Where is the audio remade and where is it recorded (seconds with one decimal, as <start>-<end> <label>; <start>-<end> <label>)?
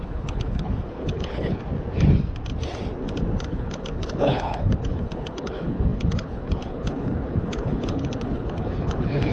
0.0-1.6 remade; 1.6-3.5 recorded; 3.5-9.3 remade